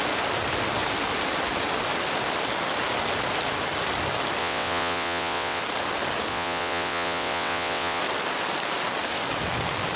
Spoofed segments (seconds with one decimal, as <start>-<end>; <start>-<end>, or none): 4.4-5.6; 6.3-8.0